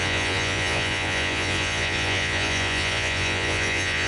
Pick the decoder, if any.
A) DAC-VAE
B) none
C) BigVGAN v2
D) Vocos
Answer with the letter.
D